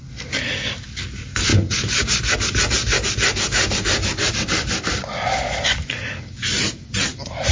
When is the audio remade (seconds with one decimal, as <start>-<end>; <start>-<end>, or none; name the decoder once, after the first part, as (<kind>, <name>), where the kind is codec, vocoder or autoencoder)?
0.0-1.5 (vocoder, BigVGAN v2); 4.3-7.5